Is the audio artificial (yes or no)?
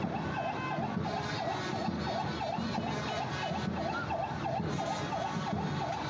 no